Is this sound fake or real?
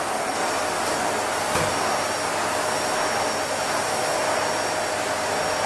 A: real